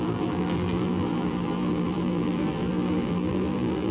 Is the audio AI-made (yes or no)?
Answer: yes